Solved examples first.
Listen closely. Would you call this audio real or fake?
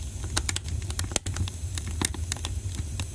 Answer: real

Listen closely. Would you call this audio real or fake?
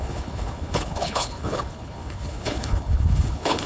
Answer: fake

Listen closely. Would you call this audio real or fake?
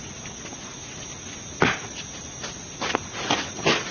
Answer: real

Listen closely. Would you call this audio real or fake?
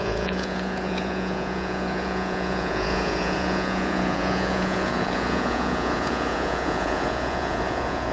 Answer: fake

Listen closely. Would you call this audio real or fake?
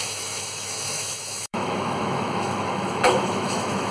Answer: fake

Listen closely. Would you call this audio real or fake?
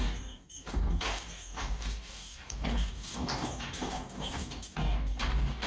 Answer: fake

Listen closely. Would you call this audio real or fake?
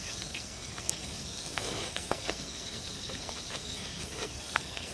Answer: fake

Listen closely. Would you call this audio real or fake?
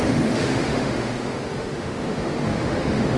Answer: fake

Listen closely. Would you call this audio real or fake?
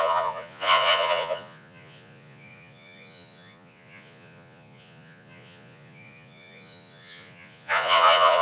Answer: fake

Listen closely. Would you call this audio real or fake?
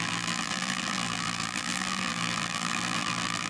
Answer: fake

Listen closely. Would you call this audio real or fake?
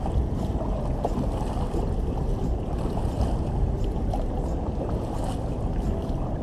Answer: real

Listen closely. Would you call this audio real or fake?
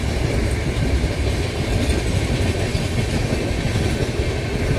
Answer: real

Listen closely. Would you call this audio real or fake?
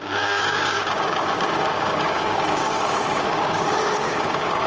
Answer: fake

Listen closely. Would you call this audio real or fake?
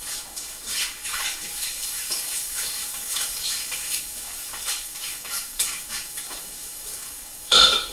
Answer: fake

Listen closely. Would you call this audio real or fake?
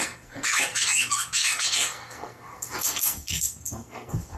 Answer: fake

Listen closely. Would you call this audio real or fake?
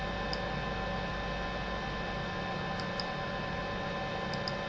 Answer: real